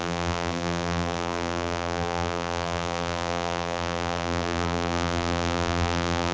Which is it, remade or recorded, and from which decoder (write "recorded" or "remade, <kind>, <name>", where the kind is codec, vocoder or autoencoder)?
remade, vocoder, BigVGAN v2